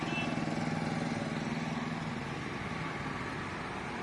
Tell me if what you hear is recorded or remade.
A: recorded